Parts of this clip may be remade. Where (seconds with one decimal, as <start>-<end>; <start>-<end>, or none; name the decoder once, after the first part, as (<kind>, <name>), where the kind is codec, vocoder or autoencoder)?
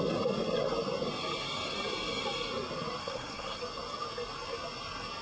3.0-3.6 (codec, SNAC)